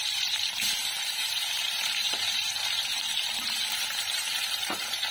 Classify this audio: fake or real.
fake